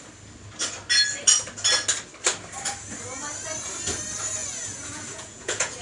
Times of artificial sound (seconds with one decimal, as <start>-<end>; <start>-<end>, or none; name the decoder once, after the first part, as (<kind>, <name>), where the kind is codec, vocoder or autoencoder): 4.4-5.8 (vocoder, Vocos)